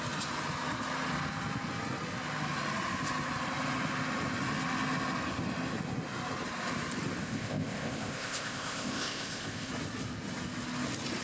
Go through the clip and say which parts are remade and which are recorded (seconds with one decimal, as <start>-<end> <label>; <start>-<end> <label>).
0.0-7.2 recorded; 7.2-9.7 remade; 9.7-11.2 recorded